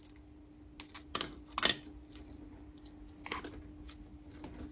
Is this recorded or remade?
recorded